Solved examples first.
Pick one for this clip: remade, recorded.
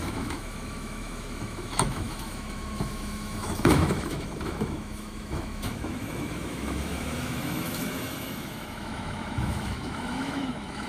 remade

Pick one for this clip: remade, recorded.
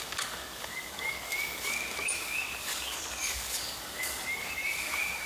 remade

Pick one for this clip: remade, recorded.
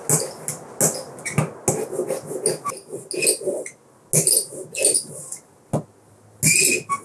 recorded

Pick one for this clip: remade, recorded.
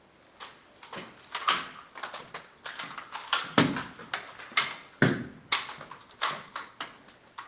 recorded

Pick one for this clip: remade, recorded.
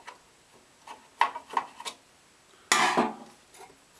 recorded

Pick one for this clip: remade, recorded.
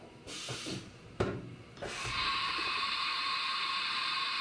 remade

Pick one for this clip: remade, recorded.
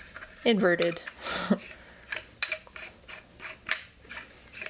recorded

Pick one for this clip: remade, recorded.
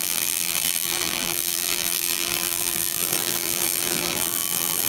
remade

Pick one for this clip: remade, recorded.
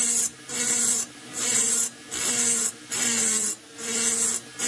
recorded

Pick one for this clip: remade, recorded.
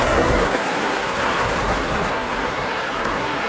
remade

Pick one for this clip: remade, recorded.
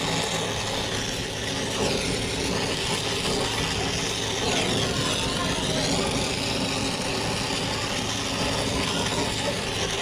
recorded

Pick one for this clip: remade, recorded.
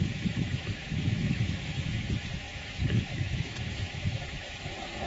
remade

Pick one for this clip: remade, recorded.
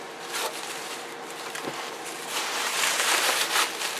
remade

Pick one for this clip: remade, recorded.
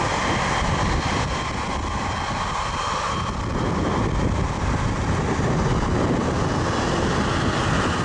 recorded